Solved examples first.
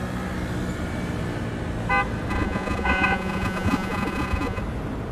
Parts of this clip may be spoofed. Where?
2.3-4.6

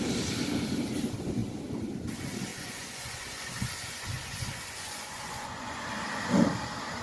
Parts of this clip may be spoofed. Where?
2.5-5.8

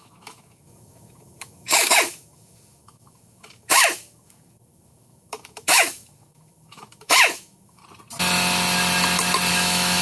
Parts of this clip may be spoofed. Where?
0.0-7.8; 9.5-10.0

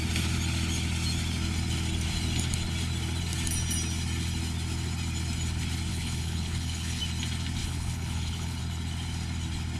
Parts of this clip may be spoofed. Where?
5.9-7.0; 7.6-8.6

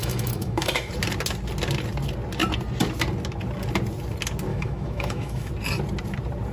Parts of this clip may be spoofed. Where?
0.0-0.9; 4.5-5.5